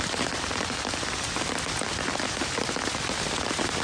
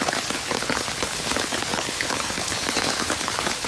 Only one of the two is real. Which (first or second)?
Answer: first